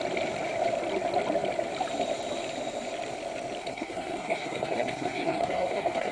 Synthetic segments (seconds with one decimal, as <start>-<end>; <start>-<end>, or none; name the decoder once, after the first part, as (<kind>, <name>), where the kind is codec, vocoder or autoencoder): 3.6-6.1 (codec, SNAC)